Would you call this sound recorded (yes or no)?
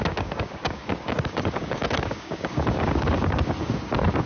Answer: no